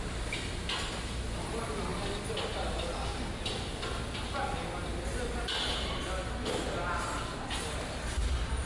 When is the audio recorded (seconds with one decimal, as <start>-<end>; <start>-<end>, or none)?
0.0-8.7